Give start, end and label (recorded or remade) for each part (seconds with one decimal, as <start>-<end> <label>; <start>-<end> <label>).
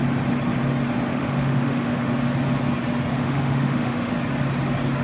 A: 0.0-1.1 recorded; 1.1-2.1 remade; 2.1-3.1 recorded; 3.1-4.1 remade; 4.1-5.0 recorded